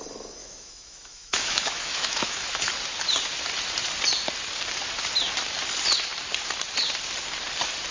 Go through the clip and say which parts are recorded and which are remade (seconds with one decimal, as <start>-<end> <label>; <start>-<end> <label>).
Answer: 0.0-0.4 recorded; 0.4-2.7 remade; 2.7-7.9 recorded